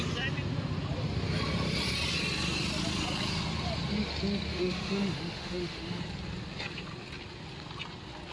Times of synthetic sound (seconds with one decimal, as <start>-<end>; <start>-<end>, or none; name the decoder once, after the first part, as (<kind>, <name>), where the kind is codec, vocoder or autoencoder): 4.5-6.0 (autoencoder, DAC-VAE)

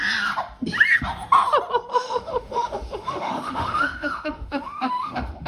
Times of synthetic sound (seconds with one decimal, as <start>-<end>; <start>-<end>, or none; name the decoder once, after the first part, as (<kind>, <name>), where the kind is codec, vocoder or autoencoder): 1.9-5.5 (autoencoder, DAC-VAE)

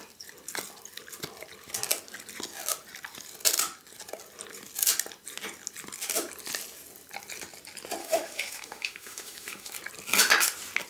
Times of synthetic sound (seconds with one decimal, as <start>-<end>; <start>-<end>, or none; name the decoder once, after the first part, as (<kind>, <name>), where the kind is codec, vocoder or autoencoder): 8.0-9.7 (autoencoder, DAC-VAE)

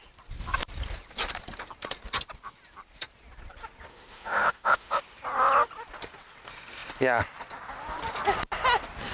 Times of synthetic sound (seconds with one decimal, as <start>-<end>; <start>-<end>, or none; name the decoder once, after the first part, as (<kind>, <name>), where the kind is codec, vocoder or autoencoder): 3.9-5.0 (autoencoder, DAC-VAE)

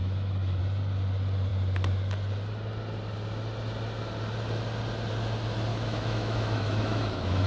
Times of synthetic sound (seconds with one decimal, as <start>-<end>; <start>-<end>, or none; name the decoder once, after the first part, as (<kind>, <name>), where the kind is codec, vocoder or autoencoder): 0.0-0.6 (autoencoder, DAC-VAE); 5.7-7.5